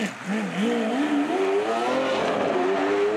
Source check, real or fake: real